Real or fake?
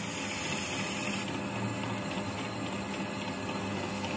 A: real